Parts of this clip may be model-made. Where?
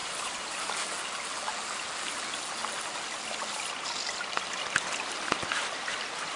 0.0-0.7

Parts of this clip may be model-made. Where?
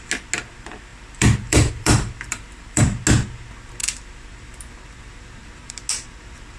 0.9-2.8; 3.8-5.7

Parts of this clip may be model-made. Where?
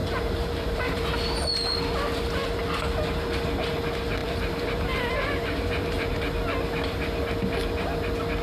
0.0-1.0; 4.2-6.1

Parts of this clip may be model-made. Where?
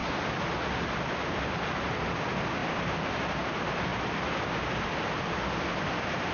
0.0-1.5; 2.6-3.5; 3.9-4.5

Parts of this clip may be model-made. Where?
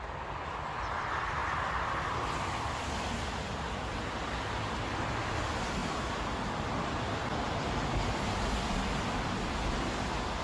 none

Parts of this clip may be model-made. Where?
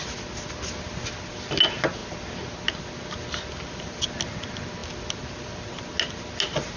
none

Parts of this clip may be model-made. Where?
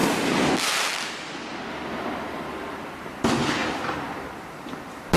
1.0-1.5; 2.3-3.6